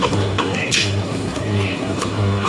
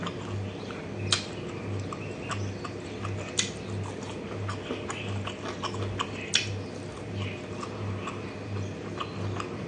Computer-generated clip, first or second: first